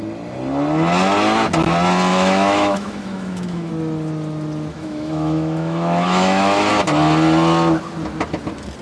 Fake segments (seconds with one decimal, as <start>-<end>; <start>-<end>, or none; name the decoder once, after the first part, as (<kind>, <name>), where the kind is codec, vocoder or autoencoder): 2.1-3.7 (autoencoder, DAC-VAE); 4.7-6.7